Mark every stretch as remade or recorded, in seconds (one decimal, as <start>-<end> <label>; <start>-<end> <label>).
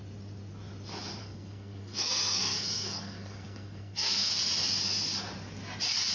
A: 0.0-1.2 recorded; 1.2-4.3 remade; 4.3-6.1 recorded